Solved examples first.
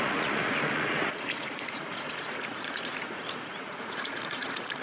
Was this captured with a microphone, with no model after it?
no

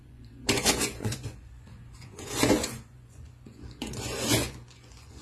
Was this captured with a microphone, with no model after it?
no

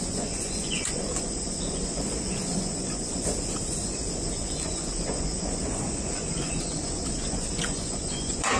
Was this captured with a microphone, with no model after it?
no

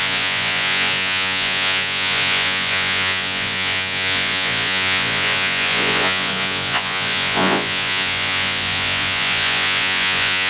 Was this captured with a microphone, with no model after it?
no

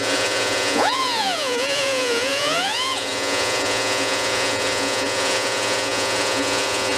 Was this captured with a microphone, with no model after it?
no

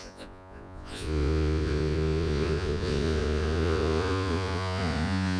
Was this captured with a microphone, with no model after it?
no